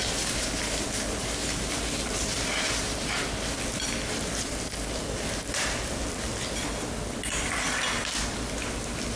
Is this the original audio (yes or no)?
yes